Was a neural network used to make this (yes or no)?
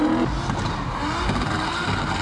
no